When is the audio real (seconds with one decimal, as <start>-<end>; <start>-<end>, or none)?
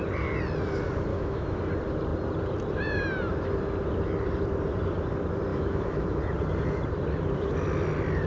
0.0-1.1; 1.6-5.5; 6.2-8.3